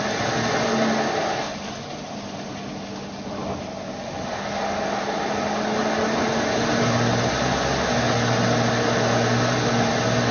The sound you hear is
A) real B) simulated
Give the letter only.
A